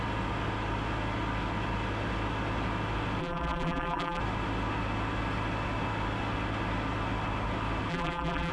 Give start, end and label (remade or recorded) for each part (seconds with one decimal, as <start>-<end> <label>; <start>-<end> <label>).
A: 0.0-3.2 recorded; 3.2-4.2 remade; 4.2-7.9 recorded; 7.9-8.5 remade